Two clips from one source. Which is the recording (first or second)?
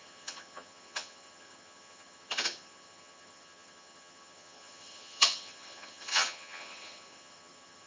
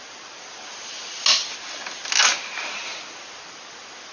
second